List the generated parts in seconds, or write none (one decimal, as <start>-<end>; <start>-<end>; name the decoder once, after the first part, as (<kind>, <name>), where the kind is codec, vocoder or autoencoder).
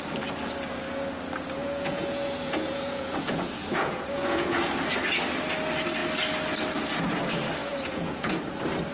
1.6-4.6 (vocoder, Vocos); 7.6-8.4